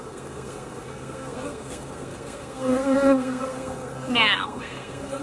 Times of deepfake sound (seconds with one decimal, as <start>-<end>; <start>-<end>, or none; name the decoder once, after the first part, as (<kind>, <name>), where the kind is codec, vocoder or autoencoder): 0.0-5.2 (codec, SNAC)